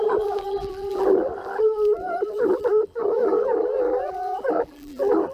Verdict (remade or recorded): remade